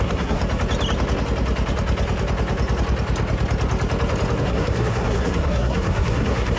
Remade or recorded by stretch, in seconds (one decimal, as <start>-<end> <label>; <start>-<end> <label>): 0.0-0.4 remade; 0.4-4.4 recorded; 4.4-6.6 remade